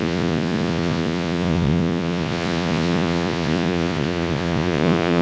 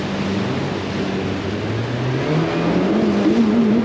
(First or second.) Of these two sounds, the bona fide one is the second